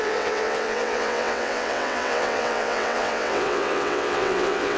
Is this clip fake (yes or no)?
yes